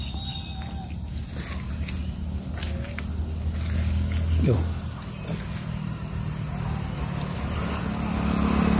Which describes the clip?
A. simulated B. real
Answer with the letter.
B